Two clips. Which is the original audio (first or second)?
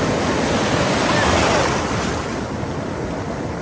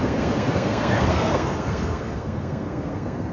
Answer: first